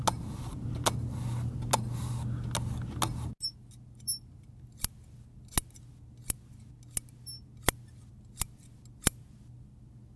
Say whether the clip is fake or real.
real